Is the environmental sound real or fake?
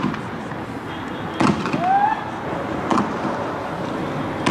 real